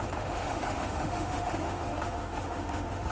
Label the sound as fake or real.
fake